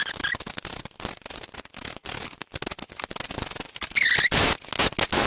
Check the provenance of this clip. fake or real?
real